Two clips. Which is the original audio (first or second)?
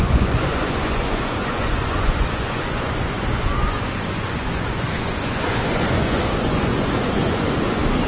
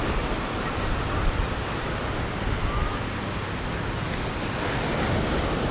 second